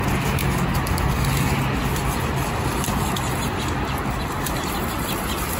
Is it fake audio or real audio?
real